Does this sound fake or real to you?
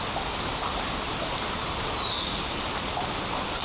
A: real